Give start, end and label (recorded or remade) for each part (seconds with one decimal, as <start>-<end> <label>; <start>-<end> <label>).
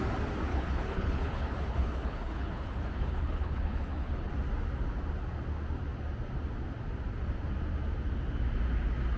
0.0-0.5 recorded; 0.5-4.3 remade; 4.3-9.2 recorded